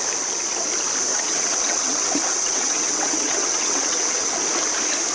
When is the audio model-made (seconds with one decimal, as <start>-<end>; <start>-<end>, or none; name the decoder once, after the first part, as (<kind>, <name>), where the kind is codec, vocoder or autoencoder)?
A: 1.1-4.2 (vocoder, WaveNeXt)

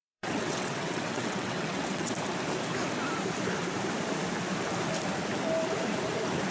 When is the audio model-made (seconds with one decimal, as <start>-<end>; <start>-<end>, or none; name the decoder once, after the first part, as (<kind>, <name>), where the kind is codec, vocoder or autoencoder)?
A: 0.0-2.1 (vocoder, WaveNeXt)

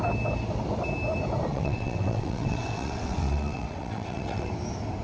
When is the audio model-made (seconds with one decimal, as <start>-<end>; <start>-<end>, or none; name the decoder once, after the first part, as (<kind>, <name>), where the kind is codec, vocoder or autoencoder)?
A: 1.5-4.5 (vocoder, WaveNeXt)

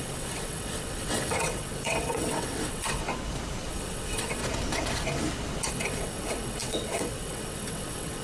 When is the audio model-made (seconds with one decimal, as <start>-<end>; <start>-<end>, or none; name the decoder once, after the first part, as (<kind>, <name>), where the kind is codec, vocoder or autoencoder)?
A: 0.0-3.0 (vocoder, WaveNeXt); 3.7-4.4; 5.7-8.2

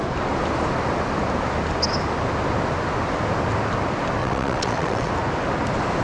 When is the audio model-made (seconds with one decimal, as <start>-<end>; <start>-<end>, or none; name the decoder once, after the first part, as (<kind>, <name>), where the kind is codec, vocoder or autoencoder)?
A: 4.2-5.1 (vocoder, WaveNeXt)

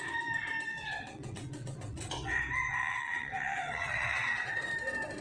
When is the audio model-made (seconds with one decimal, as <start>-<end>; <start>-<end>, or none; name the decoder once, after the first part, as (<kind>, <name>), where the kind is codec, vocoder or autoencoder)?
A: 0.7-2.4 (vocoder, WaveNeXt); 2.8-4.6